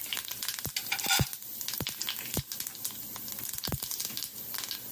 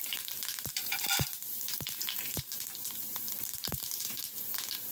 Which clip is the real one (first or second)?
first